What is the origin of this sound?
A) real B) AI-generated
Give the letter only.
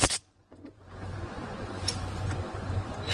B